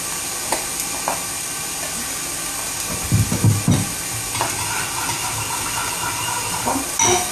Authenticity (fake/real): real